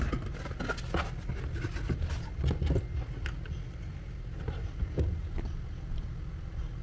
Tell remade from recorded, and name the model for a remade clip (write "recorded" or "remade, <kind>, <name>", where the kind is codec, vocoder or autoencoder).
recorded